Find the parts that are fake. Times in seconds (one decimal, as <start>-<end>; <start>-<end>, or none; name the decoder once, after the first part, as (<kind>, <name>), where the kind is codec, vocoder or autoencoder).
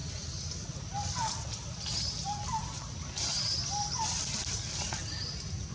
none